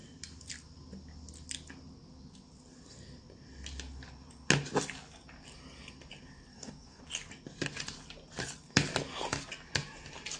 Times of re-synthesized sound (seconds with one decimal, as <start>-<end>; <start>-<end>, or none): 6.5-7.0